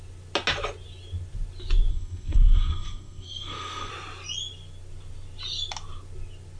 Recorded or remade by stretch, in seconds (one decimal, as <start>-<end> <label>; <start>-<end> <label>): 0.0-1.9 recorded; 1.9-3.9 remade; 3.9-6.6 recorded